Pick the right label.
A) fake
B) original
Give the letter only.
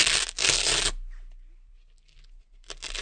B